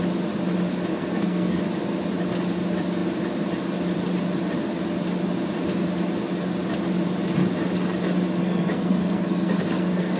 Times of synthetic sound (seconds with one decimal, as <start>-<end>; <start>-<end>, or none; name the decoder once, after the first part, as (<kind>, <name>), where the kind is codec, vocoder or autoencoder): 0.9-1.6 (codec, SNAC); 8.4-10.2

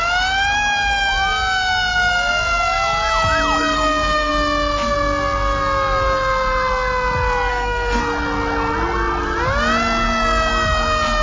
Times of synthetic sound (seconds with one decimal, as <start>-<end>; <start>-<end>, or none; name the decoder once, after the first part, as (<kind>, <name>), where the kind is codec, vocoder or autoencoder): 3.6-4.3 (codec, SNAC); 7.5-8.0

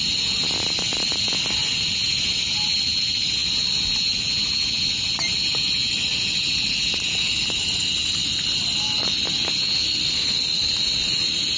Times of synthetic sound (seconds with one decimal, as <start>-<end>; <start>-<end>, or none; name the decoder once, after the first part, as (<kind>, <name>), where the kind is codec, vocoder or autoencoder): none

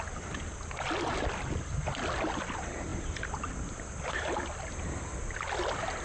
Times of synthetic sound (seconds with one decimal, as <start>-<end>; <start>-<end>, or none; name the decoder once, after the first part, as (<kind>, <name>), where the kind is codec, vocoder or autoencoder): none

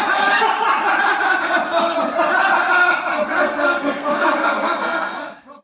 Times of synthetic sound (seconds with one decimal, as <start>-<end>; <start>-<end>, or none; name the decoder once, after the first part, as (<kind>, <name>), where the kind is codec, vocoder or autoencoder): 3.1-5.6 (codec, SNAC)

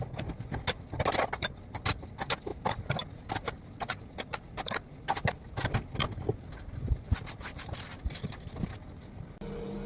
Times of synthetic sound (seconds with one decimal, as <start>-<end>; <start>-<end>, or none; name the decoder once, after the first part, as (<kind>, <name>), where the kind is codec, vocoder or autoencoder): none